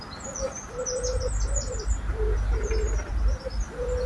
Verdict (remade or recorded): recorded